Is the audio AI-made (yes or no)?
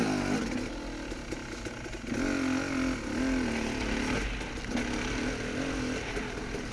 no